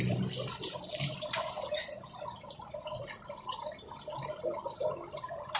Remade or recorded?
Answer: remade